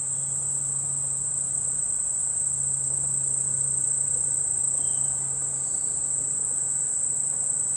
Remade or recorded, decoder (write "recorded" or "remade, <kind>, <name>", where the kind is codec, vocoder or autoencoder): recorded